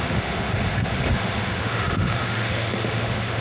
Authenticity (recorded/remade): remade